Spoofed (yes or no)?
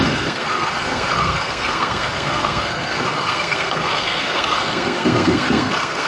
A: yes